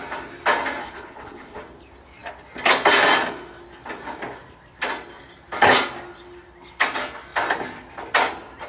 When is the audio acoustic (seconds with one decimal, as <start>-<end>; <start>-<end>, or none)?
0.0-0.8; 1.6-8.7